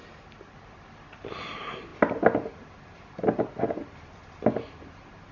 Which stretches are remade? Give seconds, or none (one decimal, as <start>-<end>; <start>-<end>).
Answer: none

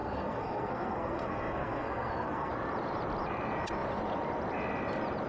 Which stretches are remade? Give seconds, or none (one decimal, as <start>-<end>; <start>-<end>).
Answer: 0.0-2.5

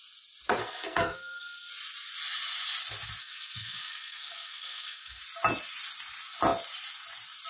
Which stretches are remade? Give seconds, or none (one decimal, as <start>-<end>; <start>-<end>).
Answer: 0.6-1.7; 3.2-5.2